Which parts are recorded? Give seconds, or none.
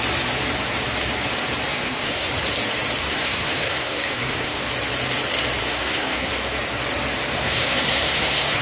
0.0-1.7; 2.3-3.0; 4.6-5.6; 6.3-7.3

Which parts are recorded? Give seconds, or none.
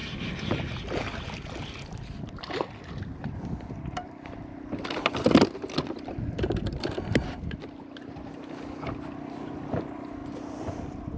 0.0-3.2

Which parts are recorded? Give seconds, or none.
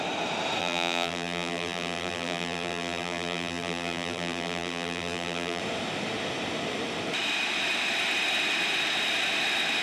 0.0-0.6; 5.6-9.8